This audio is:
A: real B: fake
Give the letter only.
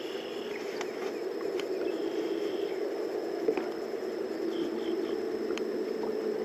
A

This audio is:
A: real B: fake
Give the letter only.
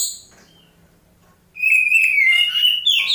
A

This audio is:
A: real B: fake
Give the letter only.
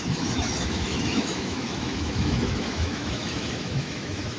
B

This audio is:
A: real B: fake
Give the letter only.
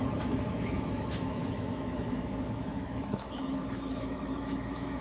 B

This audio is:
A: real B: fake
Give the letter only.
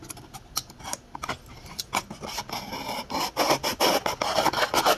A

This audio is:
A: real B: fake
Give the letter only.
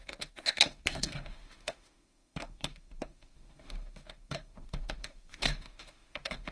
B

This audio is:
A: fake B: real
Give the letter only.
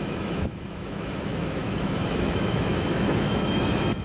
A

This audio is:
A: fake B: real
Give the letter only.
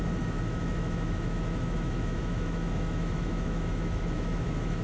A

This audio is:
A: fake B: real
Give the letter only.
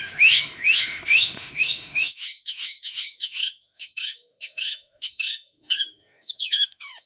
A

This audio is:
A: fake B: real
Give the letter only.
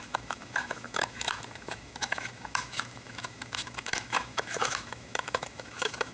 A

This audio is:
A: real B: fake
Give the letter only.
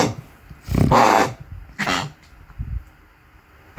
A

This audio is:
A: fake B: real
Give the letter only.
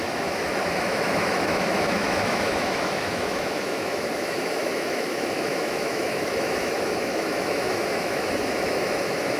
A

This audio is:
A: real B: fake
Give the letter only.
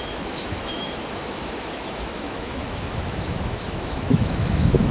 B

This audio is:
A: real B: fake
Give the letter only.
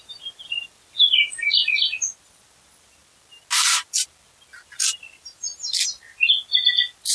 A